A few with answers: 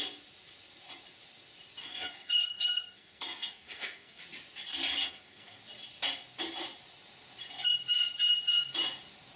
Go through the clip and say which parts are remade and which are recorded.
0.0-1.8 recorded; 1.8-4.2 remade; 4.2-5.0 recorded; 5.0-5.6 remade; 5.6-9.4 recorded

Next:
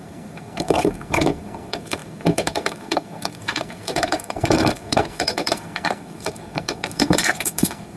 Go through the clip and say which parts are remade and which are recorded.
0.0-8.0 remade

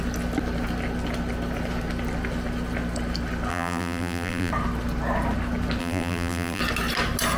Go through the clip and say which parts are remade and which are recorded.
0.0-3.5 recorded; 3.5-4.5 remade; 4.5-5.8 recorded; 5.8-6.6 remade; 6.6-7.4 recorded

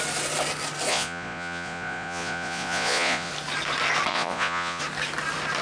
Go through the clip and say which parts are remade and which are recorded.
0.0-0.9 recorded; 0.9-3.3 remade; 3.3-4.1 recorded; 4.1-4.8 remade; 4.8-5.6 recorded